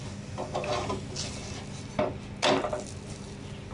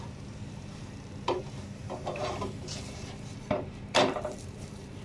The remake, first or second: second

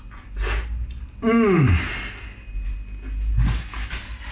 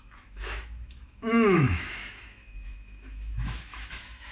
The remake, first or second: second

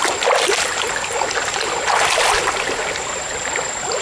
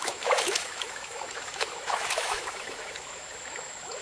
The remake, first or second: second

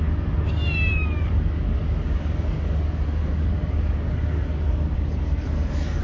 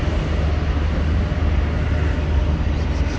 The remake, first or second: first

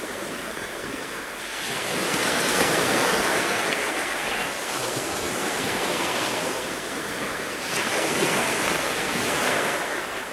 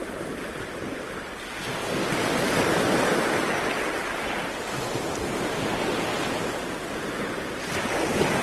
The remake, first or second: first